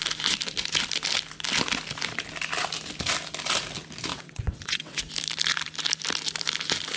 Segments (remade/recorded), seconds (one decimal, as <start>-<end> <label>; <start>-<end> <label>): 0.0-4.1 recorded; 4.1-5.0 remade; 5.0-7.0 recorded